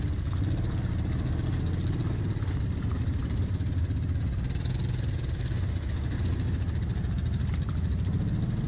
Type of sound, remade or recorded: recorded